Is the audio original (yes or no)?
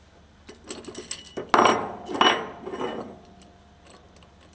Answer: yes